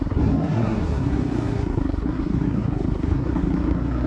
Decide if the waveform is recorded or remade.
remade